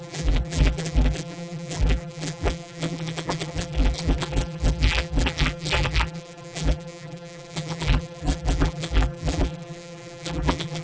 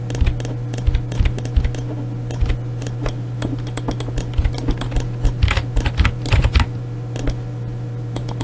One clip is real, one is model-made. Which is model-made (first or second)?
first